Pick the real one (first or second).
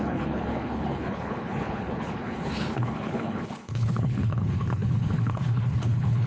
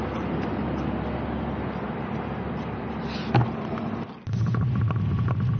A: second